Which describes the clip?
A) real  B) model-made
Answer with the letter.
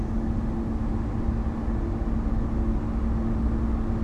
A